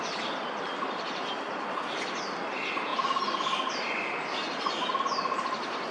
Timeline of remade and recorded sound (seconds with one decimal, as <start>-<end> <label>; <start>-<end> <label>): 0.0-5.9 recorded